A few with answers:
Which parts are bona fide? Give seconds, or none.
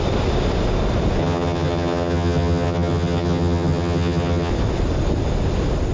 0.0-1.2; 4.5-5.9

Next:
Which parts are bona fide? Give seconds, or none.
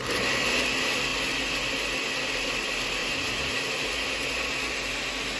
0.0-3.0; 3.9-5.4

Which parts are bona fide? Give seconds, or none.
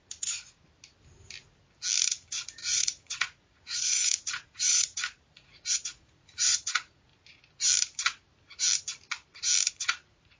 0.6-2.1; 7.1-9.7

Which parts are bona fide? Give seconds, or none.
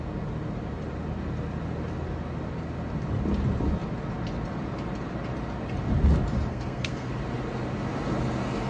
0.0-6.5; 7.1-8.7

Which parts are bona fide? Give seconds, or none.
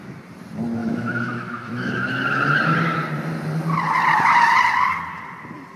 0.0-0.8; 2.2-5.8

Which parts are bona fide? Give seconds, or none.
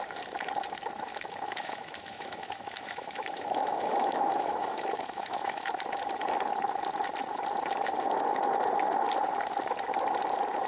0.0-1.1; 5.7-10.7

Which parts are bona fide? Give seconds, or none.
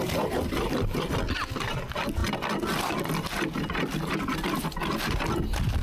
0.0-5.8